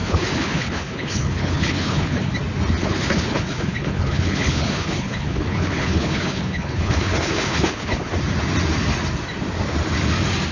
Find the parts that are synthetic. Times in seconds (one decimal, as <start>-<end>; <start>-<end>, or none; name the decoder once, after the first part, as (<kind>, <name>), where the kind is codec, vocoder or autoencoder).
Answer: 0.0-2.3 (codec, HILCodec); 2.8-8.1